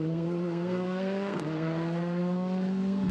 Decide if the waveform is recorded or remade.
remade